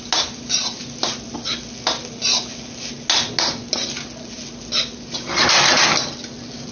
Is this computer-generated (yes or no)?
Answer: no